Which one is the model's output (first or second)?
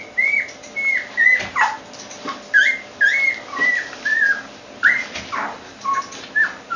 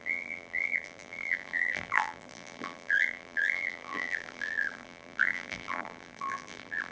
second